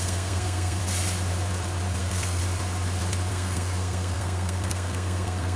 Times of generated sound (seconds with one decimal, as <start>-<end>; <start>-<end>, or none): 0.0-0.8; 2.0-2.4; 3.3-5.6